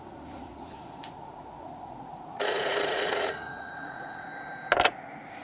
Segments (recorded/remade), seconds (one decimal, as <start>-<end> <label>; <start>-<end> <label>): 0.0-4.3 remade; 4.3-5.4 recorded